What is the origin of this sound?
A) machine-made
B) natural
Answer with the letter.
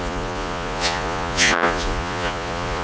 A